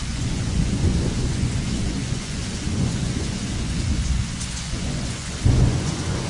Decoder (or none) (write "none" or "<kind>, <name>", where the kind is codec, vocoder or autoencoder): vocoder, Vocos